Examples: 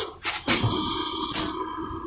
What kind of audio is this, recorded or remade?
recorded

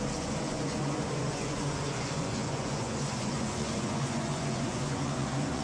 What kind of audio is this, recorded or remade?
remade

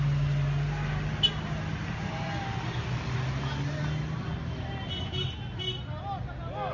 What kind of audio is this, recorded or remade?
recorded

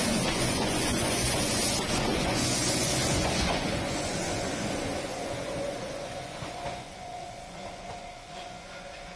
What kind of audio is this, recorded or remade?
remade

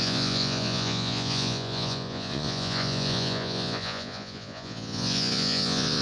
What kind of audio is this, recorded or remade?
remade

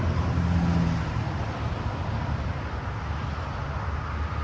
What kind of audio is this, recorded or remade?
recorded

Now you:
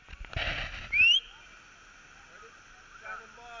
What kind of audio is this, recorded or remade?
recorded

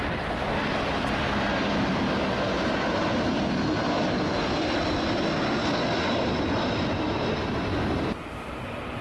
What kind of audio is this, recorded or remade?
recorded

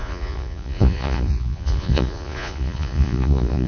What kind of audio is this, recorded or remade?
remade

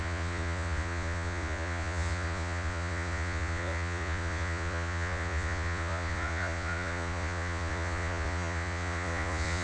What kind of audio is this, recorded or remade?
remade